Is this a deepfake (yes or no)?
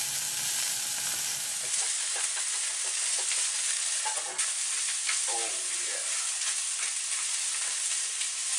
no